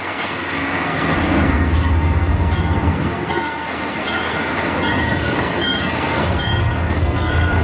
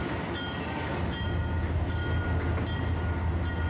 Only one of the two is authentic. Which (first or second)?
second